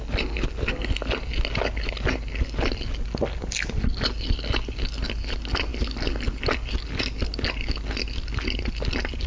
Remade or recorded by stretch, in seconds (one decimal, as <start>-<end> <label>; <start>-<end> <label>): 0.0-9.3 recorded

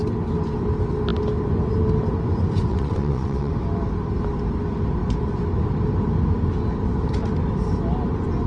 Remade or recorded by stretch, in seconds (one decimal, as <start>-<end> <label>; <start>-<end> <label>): 0.0-2.7 recorded; 2.7-3.5 remade; 3.5-8.5 recorded

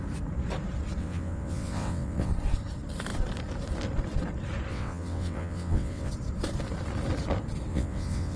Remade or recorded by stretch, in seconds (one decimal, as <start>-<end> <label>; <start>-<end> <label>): 0.0-1.0 recorded; 1.0-2.3 remade; 2.3-4.7 recorded; 4.7-6.1 remade; 6.1-7.7 recorded; 7.7-8.4 remade

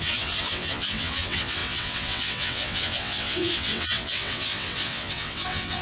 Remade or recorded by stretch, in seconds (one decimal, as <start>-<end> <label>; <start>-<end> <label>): 0.0-5.8 remade

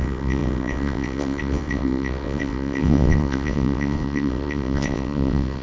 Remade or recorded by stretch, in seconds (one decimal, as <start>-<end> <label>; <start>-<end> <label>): 0.0-5.6 remade

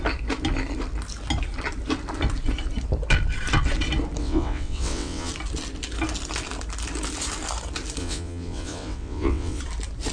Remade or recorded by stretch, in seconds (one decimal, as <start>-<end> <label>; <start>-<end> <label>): 0.0-4.2 recorded; 4.2-5.3 remade; 5.3-8.0 recorded; 8.0-9.6 remade; 9.6-10.1 recorded

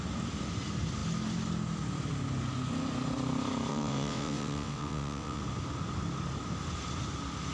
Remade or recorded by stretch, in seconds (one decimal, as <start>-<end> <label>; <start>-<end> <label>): 0.0-3.7 recorded; 3.7-5.4 remade; 5.4-7.5 recorded

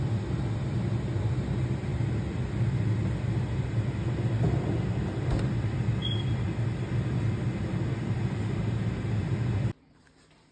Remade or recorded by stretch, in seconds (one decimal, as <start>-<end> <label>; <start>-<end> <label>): 0.0-10.5 recorded